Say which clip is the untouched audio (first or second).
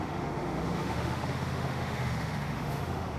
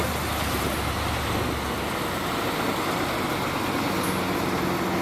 second